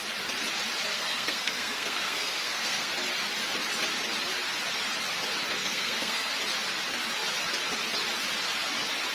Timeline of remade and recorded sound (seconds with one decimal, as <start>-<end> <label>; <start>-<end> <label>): 0.0-0.9 recorded; 0.9-2.9 remade; 2.9-5.6 recorded; 5.6-6.3 remade; 6.3-9.1 recorded